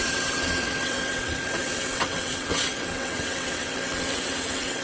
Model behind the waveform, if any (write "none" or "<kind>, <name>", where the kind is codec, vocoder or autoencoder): vocoder, WaveNeXt